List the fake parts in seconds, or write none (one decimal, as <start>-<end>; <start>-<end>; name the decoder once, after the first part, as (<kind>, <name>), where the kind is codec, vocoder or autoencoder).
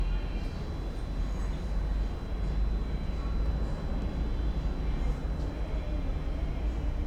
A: none